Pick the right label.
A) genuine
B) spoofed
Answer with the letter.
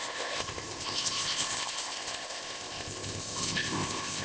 B